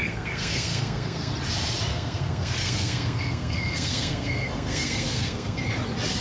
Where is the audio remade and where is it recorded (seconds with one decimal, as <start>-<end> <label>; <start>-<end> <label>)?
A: 0.0-1.3 remade; 1.3-1.9 recorded; 1.9-5.6 remade; 5.6-6.2 recorded